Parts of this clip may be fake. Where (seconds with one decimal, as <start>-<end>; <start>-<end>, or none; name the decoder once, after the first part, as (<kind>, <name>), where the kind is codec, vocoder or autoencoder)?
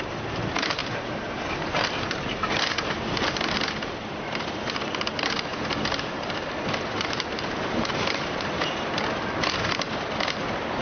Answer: 0.8-2.2 (vocoder, BigVGAN v2); 5.5-9.2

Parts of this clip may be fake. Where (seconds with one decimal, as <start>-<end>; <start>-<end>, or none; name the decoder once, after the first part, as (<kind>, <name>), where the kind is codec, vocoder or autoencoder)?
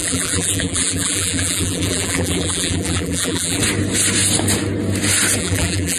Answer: 0.0-3.6 (vocoder, BigVGAN v2); 5.4-6.0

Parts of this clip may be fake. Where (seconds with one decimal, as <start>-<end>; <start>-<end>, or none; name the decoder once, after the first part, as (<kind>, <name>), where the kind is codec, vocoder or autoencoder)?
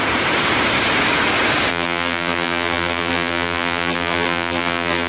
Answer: 1.7-5.1 (vocoder, BigVGAN v2)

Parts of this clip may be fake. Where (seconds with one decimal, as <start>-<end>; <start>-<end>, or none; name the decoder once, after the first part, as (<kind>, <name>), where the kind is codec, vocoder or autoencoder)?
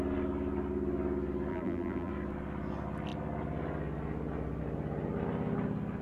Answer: 1.5-2.1 (vocoder, BigVGAN v2)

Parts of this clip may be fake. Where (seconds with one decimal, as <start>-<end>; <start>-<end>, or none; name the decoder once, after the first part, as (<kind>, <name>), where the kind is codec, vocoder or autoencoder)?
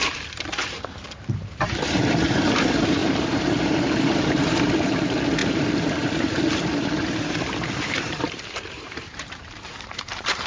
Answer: 0.0-10.5 (vocoder, BigVGAN v2)